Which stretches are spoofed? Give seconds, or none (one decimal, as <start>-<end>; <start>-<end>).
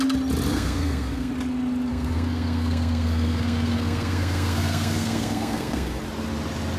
0.5-1.3; 1.9-6.0